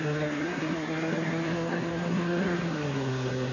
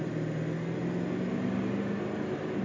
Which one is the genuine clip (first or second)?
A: second